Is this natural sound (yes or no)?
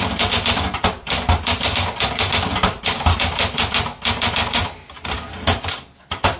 yes